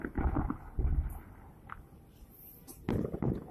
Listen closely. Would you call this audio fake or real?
real